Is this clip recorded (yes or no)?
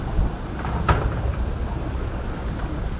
yes